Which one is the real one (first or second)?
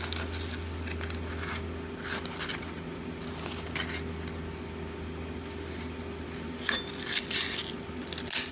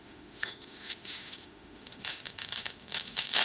first